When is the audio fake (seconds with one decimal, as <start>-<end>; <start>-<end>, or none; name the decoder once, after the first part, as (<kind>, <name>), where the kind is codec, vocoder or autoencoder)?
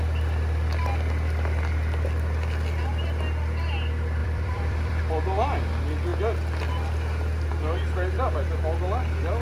4.2-5.0 (vocoder, BigVGAN v2)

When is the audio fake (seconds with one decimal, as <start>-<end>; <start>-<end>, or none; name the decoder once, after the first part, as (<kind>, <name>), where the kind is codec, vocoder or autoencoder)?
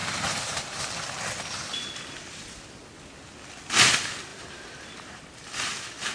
0.0-0.8 (vocoder, BigVGAN v2); 2.3-2.8; 4.3-5.2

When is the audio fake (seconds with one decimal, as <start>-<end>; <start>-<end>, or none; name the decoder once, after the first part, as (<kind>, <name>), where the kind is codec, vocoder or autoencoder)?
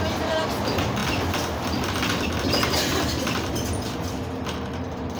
none